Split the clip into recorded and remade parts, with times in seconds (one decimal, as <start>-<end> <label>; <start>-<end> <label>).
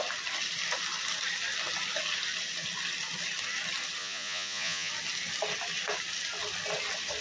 0.0-4.0 recorded; 4.0-4.9 remade; 4.9-7.2 recorded